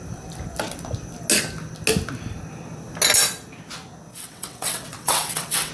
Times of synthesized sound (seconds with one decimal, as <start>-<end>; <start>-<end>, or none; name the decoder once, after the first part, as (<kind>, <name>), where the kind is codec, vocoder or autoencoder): 4.1-5.7 (vocoder, WaveNeXt)